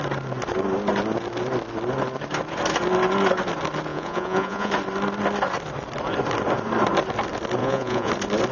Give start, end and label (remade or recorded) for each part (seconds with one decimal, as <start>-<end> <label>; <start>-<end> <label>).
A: 0.0-3.9 recorded; 3.9-4.7 remade; 4.7-7.6 recorded; 7.6-8.1 remade; 8.1-8.5 recorded